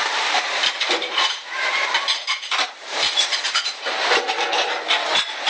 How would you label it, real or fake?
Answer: fake